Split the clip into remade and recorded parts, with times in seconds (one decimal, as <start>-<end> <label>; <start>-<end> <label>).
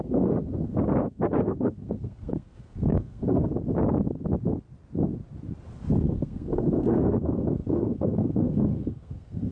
0.0-3.5 remade; 3.5-6.0 recorded; 6.0-9.5 remade